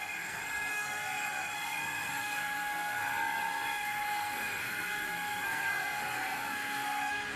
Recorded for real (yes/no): no